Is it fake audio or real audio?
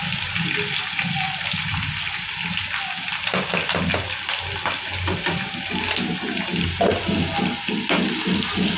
real